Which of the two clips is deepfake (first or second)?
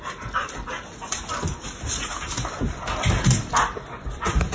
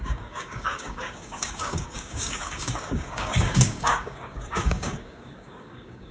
second